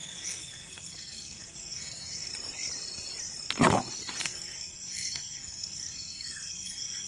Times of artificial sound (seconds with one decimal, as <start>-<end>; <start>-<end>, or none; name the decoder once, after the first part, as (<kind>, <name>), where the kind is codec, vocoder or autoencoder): 0.0-2.3 (codec, SNAC); 4.2-7.1